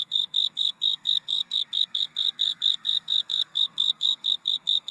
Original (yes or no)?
no